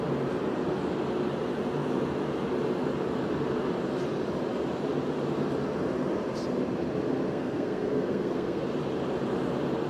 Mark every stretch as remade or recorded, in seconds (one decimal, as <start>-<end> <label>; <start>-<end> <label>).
0.0-7.3 recorded; 7.3-8.6 remade; 8.6-9.9 recorded